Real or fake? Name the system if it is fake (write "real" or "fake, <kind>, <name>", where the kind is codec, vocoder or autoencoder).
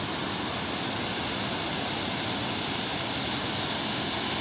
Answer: real